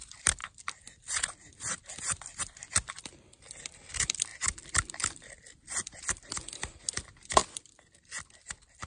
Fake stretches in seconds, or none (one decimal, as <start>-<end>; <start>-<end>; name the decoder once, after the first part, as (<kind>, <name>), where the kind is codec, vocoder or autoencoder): none